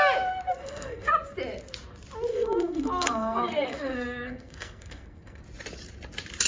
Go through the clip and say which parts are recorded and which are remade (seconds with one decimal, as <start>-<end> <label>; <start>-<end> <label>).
0.0-0.6 recorded; 0.6-1.1 remade; 1.1-2.3 recorded; 2.3-5.4 remade; 5.4-6.5 recorded